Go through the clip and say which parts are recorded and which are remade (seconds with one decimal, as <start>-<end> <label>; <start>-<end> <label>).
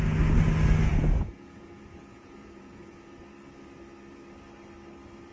0.0-0.9 recorded; 0.9-3.2 remade; 3.2-5.3 recorded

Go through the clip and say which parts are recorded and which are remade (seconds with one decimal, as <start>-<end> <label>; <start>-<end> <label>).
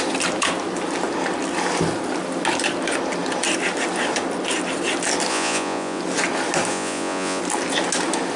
0.0-5.3 recorded; 5.3-6.0 remade; 6.0-6.7 recorded; 6.7-7.4 remade; 7.4-8.4 recorded